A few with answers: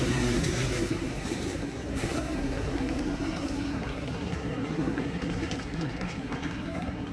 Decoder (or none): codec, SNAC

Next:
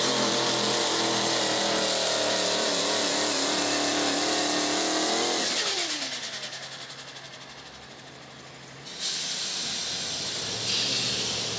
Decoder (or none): none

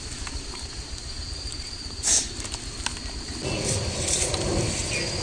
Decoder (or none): none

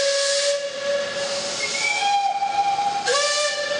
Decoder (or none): none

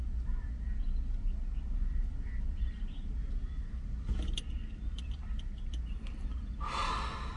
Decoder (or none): none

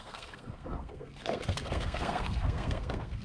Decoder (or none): codec, SNAC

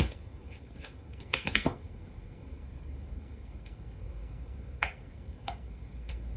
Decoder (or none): codec, SNAC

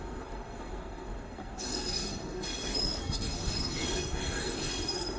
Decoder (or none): codec, SNAC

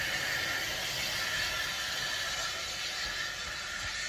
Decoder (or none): none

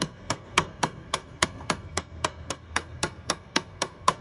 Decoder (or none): codec, SNAC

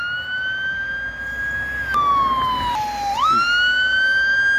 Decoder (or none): none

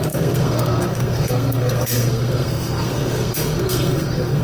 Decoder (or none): codec, SNAC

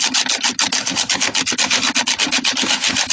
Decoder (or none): none